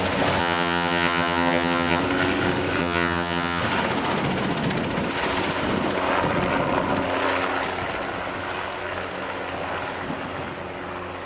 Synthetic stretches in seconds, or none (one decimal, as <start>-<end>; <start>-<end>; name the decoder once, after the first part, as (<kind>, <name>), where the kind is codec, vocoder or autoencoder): 0.4-2.0 (vocoder, HiFi-GAN); 2.8-3.6